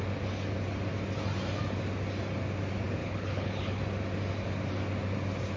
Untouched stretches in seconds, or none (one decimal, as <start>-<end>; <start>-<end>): 0.0-3.0; 3.8-5.6